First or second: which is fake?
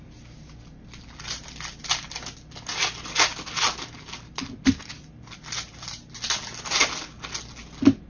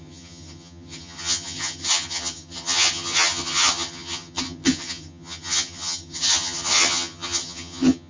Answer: second